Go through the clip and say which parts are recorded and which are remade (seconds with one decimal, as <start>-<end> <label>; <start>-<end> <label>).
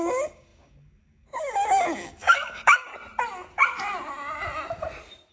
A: 0.0-2.9 remade; 2.9-5.3 recorded